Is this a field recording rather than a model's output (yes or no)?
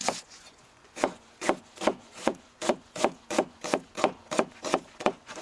no